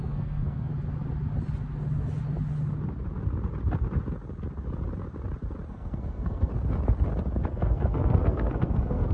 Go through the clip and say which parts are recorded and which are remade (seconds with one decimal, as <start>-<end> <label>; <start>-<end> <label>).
0.0-0.7 remade; 0.7-5.7 recorded; 5.7-6.5 remade; 6.5-7.5 recorded; 7.5-9.1 remade